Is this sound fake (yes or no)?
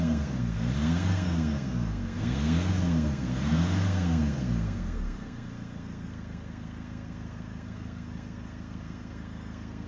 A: yes